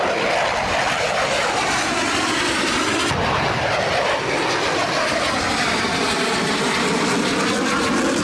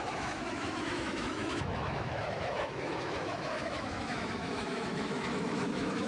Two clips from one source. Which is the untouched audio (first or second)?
first